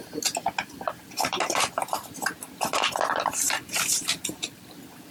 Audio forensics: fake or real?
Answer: real